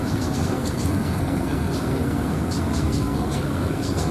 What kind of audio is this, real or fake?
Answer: fake